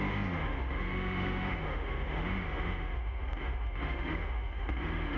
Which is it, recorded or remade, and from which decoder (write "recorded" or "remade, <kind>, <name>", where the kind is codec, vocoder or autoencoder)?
remade, autoencoder, DAC-VAE